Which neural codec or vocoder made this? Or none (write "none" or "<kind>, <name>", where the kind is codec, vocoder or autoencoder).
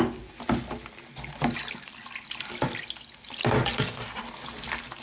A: none